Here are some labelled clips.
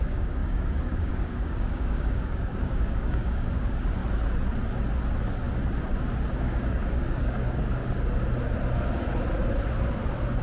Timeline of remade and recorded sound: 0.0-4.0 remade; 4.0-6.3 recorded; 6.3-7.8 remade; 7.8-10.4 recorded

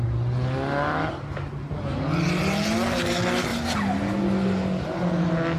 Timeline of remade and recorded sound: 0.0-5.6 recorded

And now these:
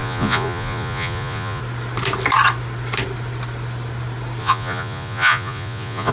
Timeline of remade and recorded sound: 0.0-1.6 remade; 1.6-4.4 recorded; 4.4-6.1 remade

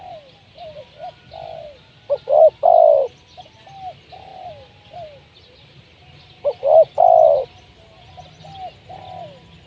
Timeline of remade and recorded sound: 0.0-9.7 recorded

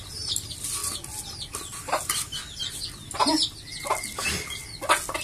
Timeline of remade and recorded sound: 0.0-5.2 recorded

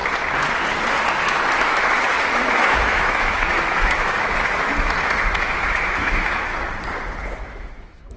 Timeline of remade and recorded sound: 0.0-1.1 recorded; 1.1-4.7 remade; 4.7-5.3 recorded; 5.3-6.5 remade; 6.5-7.4 recorded; 7.4-8.2 remade

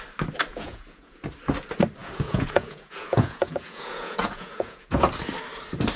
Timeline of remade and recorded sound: 0.0-0.5 recorded; 0.5-1.2 remade; 1.2-2.0 recorded; 2.0-5.1 remade; 5.1-6.0 recorded